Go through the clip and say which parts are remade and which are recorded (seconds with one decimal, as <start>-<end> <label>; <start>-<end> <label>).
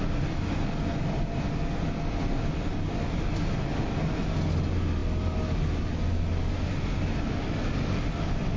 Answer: 0.0-8.6 recorded